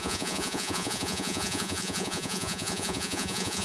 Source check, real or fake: fake